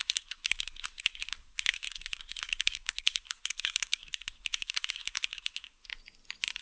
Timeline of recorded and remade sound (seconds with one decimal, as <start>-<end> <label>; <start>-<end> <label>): 0.0-5.9 remade; 5.9-6.6 recorded